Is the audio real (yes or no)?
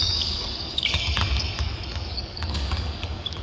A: no